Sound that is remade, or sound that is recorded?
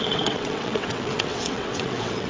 remade